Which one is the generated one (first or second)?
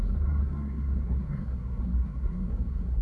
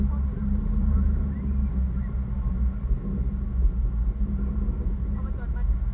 first